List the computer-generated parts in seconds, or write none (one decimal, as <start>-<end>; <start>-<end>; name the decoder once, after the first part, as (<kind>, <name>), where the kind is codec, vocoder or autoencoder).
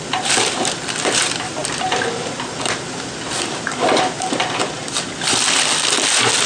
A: none